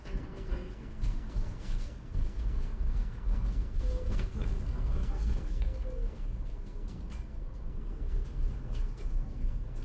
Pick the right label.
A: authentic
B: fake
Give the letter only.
B